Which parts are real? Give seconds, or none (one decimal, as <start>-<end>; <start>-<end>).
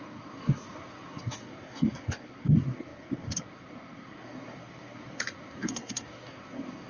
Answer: none